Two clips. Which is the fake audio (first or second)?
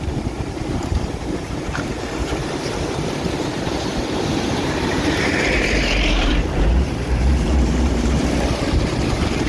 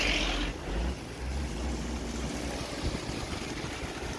first